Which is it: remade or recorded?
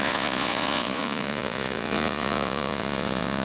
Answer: remade